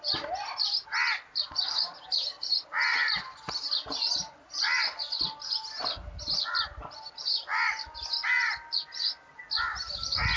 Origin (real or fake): real